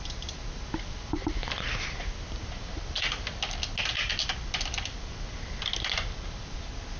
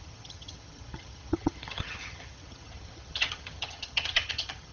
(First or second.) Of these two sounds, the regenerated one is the second